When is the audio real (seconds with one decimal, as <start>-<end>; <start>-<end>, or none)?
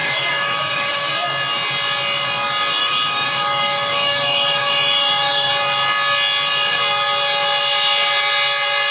1.1-2.8; 5.5-8.9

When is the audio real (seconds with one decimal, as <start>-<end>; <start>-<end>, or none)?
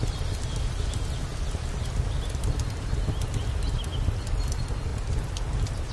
0.0-5.9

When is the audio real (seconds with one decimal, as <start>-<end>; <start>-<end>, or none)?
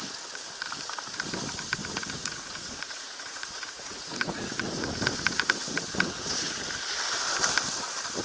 0.0-1.8; 6.7-8.2